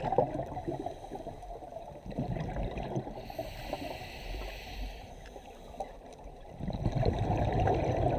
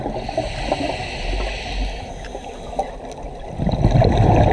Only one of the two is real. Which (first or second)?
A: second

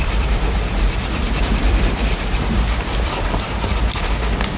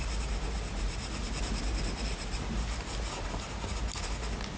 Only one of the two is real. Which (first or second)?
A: second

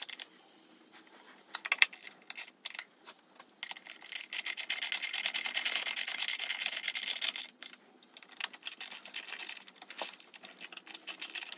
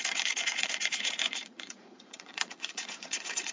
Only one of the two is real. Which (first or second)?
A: first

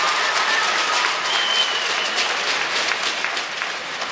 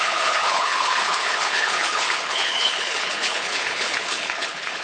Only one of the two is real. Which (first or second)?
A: first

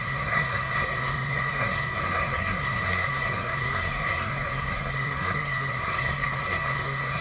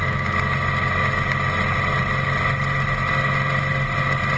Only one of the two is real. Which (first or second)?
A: second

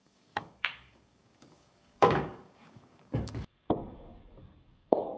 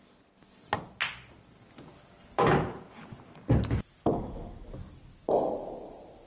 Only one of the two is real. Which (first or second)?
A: second